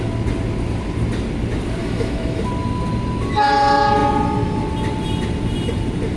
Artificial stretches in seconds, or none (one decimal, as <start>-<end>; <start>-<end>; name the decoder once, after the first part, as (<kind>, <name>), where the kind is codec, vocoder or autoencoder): 1.8-2.4 (autoencoder, DAC-VAE)